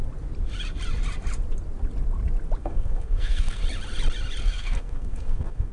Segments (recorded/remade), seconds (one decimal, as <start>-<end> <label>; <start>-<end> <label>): 0.0-2.6 recorded; 2.6-3.6 remade; 3.6-4.4 recorded; 4.4-5.7 remade